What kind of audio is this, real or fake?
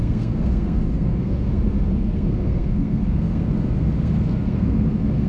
fake